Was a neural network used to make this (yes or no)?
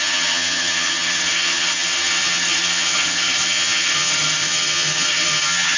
yes